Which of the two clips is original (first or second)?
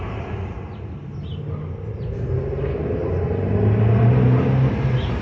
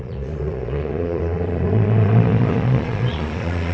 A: first